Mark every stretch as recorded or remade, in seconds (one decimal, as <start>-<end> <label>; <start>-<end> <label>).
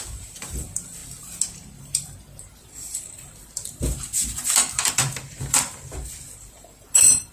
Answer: 0.0-1.0 remade; 1.0-1.8 recorded; 1.8-7.3 remade